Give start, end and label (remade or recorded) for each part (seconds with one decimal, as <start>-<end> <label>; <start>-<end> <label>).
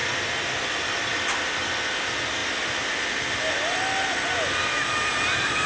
0.0-5.7 recorded